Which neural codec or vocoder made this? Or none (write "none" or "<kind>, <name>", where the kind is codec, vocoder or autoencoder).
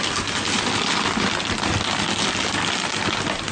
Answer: none